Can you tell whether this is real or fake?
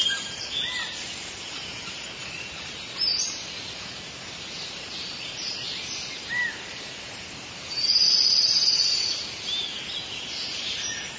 fake